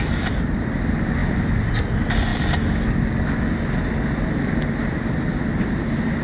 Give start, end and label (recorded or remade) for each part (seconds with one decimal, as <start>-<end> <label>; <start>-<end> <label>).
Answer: 0.0-6.2 recorded